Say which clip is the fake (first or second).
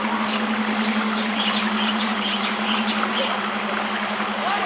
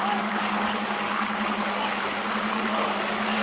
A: second